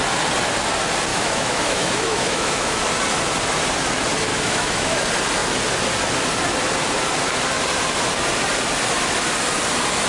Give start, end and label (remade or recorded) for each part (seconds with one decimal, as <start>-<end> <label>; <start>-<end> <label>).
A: 0.0-1.1 recorded; 1.1-2.8 remade; 2.8-4.3 recorded; 4.3-5.0 remade; 5.0-10.1 recorded

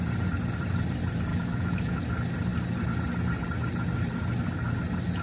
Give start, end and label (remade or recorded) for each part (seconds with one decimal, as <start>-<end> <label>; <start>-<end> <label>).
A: 0.0-1.3 recorded; 1.3-2.0 remade; 2.0-5.2 recorded

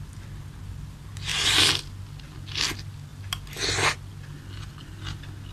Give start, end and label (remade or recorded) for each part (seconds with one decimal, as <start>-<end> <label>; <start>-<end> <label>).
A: 0.0-5.5 recorded

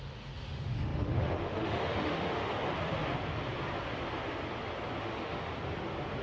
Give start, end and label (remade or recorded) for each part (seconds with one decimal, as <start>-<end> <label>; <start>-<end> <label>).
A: 0.0-2.5 remade; 2.5-5.0 recorded; 5.0-5.5 remade; 5.5-6.2 recorded

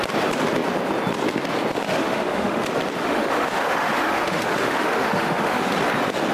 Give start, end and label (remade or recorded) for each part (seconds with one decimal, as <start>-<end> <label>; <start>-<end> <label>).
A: 0.0-2.0 recorded; 2.0-2.6 remade; 2.6-3.0 recorded; 3.0-5.7 remade; 5.7-6.3 recorded

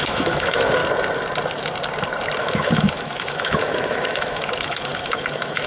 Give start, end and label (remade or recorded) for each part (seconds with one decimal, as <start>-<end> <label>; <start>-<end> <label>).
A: 0.0-0.8 remade; 0.8-2.4 recorded; 2.4-5.7 remade

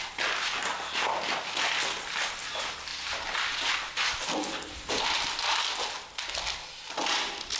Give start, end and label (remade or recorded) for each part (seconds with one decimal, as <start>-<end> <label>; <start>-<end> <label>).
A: 0.0-7.6 recorded